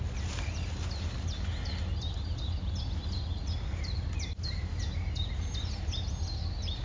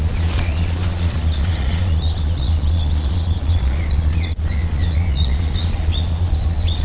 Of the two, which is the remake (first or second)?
second